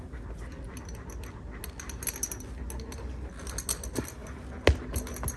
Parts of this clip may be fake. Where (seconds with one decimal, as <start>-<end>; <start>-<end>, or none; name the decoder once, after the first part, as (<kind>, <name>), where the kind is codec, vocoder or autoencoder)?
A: none